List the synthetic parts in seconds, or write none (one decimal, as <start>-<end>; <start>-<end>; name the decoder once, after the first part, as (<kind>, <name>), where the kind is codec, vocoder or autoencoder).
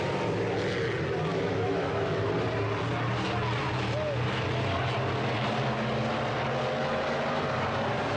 1.3-2.3 (autoencoder, DAC-VAE)